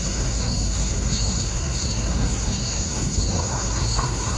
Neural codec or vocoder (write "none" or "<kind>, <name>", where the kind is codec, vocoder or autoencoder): codec, SNAC